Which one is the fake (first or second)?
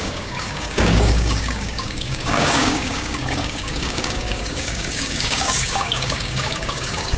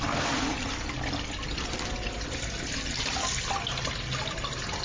first